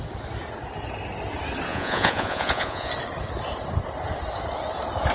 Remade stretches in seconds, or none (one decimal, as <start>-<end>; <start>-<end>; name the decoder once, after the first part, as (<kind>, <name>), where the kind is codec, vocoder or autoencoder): 1.7-2.9 (vocoder, Vocos)